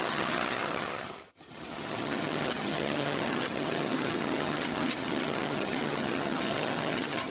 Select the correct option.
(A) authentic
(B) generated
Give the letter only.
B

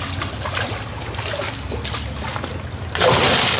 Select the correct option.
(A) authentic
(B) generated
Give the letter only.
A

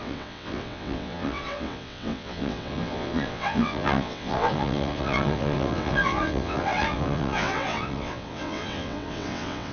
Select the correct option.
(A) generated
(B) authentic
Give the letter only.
A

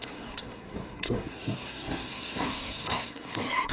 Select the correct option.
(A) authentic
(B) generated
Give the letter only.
B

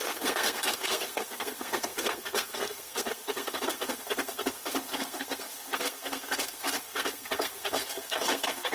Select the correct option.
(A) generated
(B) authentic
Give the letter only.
A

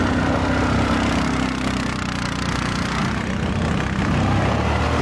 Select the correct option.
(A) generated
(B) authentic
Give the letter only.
B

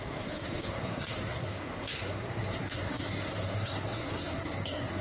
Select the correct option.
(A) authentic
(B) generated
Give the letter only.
B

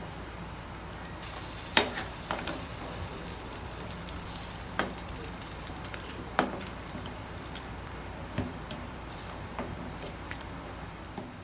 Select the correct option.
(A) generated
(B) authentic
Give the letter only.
A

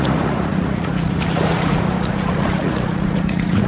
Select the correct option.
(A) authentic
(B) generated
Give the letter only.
B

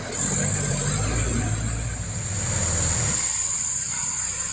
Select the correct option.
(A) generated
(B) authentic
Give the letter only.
B